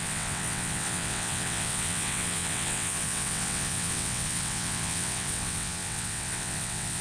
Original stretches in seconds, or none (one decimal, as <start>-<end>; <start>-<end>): none